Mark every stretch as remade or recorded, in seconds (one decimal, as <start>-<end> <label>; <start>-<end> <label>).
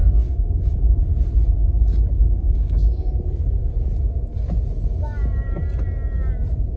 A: 0.0-1.0 remade; 1.0-2.2 recorded; 2.2-3.1 remade; 3.1-6.8 recorded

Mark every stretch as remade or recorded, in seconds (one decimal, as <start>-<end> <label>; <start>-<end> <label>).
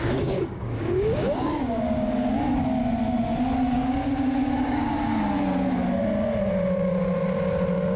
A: 0.0-2.8 remade; 2.8-3.7 recorded; 3.7-4.9 remade; 4.9-8.0 recorded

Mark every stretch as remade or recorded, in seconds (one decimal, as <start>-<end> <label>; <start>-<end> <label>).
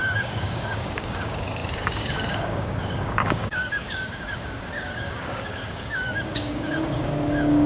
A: 0.0-7.7 remade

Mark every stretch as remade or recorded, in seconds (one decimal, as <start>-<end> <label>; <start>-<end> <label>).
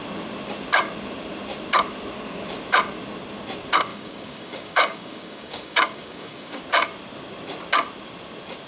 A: 0.0-3.9 recorded; 3.9-6.6 remade; 6.6-8.7 recorded